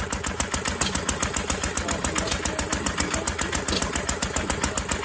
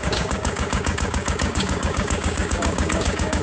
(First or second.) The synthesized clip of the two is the second